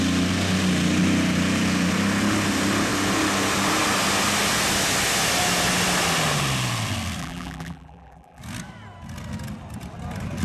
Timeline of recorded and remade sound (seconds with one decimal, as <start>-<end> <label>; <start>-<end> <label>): 0.0-7.2 recorded; 7.2-8.4 remade; 8.4-10.4 recorded